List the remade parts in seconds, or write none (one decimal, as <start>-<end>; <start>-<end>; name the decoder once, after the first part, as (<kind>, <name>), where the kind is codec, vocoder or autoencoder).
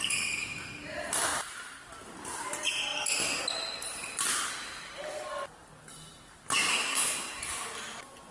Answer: 6.7-7.4 (codec, SNAC)